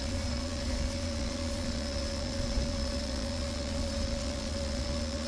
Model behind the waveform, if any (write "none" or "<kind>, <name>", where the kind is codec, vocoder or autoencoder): vocoder, Vocos